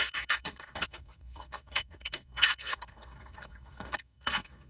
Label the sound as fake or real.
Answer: fake